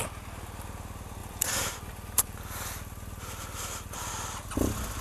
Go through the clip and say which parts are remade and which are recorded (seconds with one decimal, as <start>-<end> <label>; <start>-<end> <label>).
0.0-1.2 recorded; 1.2-4.1 remade; 4.1-5.0 recorded